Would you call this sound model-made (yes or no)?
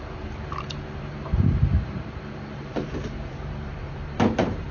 yes